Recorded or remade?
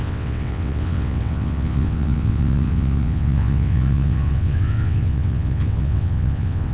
remade